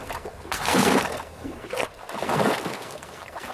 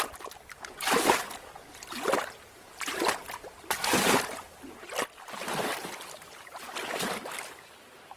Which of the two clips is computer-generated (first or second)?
first